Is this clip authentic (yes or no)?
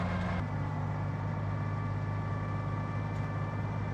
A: yes